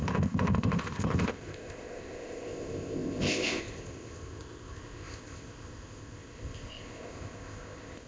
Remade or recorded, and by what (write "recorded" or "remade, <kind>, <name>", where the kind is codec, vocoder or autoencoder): remade, codec, ZipCodec